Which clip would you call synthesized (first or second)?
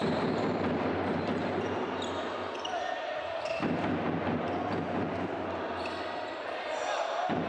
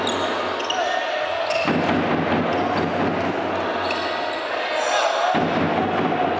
first